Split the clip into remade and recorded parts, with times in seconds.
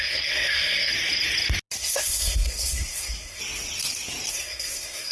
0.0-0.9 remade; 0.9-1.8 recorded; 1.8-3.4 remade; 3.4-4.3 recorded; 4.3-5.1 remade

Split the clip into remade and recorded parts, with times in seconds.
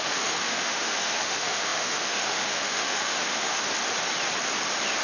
0.0-3.7 remade; 3.7-5.0 recorded